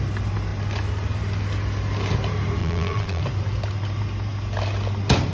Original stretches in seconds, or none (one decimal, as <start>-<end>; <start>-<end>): 0.0-2.6; 3.2-5.3